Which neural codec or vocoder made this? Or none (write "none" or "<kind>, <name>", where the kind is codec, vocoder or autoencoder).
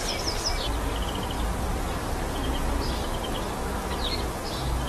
none